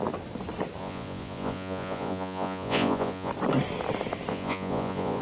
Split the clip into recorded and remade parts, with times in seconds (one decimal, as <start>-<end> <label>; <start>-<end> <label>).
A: 0.0-0.8 recorded; 0.8-3.3 remade; 3.3-4.3 recorded; 4.3-5.2 remade